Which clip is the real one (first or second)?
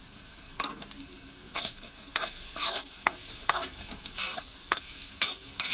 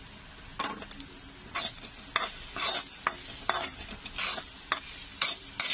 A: second